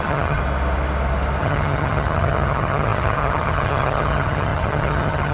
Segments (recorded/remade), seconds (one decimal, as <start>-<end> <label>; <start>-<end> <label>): 0.0-0.4 remade; 0.4-1.4 recorded; 1.4-5.3 remade